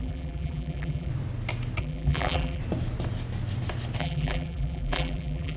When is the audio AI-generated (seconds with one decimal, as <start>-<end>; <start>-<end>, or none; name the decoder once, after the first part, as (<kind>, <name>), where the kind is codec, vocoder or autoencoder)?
0.0-1.1 (vocoder, BigVGAN v2); 1.8-2.6; 4.0-5.6